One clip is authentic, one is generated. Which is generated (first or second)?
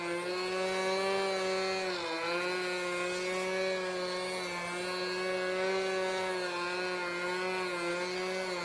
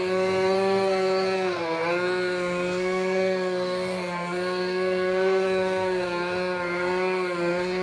second